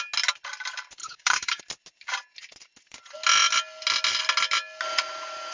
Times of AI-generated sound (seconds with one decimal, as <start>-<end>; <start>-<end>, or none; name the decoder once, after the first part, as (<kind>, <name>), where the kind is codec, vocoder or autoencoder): 1.0-1.6 (codec, DAC)